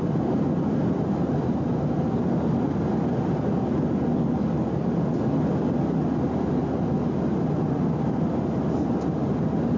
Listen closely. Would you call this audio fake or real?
real